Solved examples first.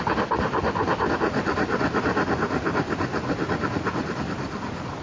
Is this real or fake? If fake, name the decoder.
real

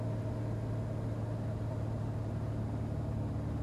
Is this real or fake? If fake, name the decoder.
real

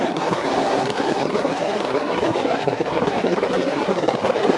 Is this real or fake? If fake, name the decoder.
fake, codec, SNAC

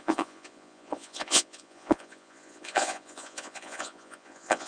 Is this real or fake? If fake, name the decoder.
fake, vocoder, Vocos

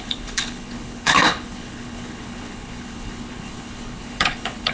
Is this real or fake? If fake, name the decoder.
fake, codec, HILCodec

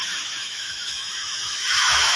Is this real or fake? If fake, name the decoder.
fake, autoencoder, DAC-VAE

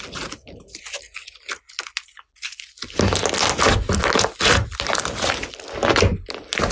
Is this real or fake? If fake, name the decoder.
real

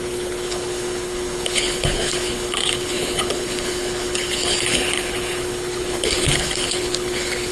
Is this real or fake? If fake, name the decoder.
fake, codec, HILCodec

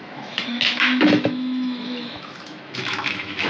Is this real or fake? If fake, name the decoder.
fake, autoencoder, DAC-VAE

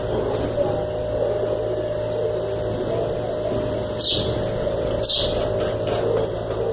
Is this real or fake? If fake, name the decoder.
real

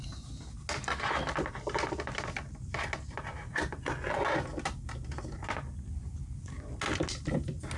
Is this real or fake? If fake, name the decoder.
real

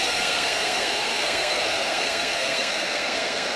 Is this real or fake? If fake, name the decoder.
fake, codec, SNAC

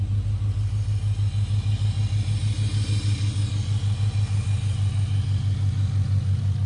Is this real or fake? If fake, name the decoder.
real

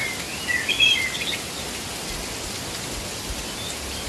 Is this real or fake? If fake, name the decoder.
real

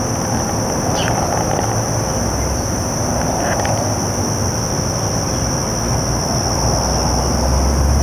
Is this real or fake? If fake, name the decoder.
real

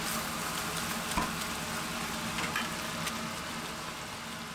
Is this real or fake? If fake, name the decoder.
real